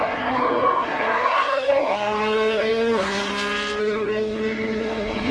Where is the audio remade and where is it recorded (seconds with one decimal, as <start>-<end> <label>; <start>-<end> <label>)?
0.0-3.3 remade; 3.3-3.8 recorded; 3.8-5.3 remade